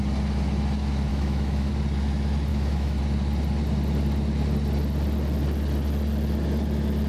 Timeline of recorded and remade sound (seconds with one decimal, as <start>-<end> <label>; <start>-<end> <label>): 0.0-1.1 recorded; 1.1-1.7 remade; 1.7-2.5 recorded; 2.5-3.0 remade; 3.0-7.1 recorded